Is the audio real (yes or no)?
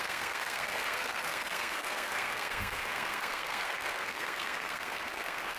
no